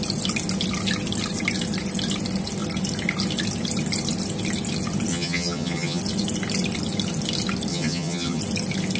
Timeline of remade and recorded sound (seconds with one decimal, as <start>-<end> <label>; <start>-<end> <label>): 0.0-5.1 recorded; 5.1-6.0 remade; 6.0-7.7 recorded; 7.7-8.4 remade; 8.4-9.0 recorded